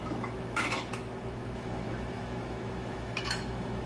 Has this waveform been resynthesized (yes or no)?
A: yes